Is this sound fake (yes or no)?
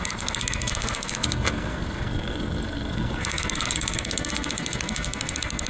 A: yes